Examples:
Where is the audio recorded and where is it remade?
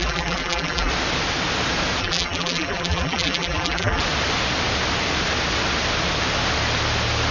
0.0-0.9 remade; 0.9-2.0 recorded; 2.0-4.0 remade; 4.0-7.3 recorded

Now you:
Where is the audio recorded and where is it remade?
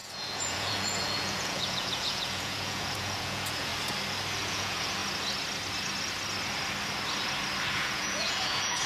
0.0-3.7 remade; 3.7-4.4 recorded; 4.4-5.0 remade; 5.0-7.7 recorded; 7.7-8.9 remade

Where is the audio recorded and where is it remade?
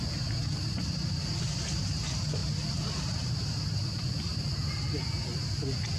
0.0-6.0 recorded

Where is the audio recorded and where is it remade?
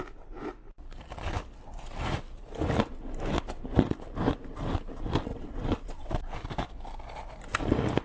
0.0-5.3 recorded; 5.3-6.1 remade; 6.1-8.0 recorded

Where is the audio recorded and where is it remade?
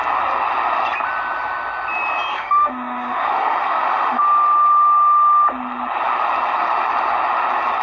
0.0-2.3 recorded; 2.3-4.2 remade; 4.2-7.8 recorded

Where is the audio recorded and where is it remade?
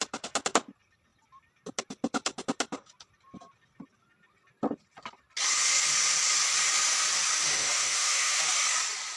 0.0-7.5 recorded; 7.5-8.4 remade; 8.4-9.2 recorded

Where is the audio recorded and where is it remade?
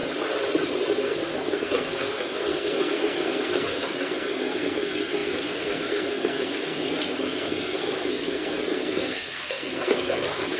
0.0-1.0 recorded; 1.0-10.6 remade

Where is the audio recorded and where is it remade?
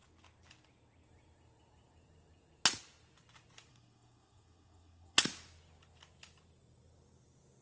0.0-3.7 recorded; 3.7-5.2 remade; 5.2-7.6 recorded